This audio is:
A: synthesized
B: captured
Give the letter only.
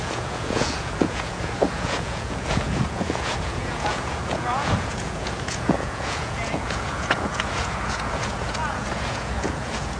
A